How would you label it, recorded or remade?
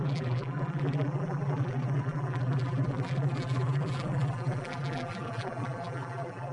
remade